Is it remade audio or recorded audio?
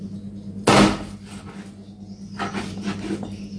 recorded